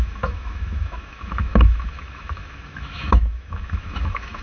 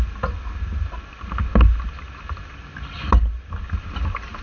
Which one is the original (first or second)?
second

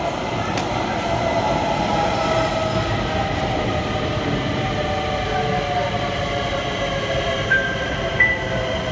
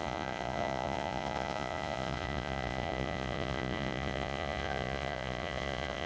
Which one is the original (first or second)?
first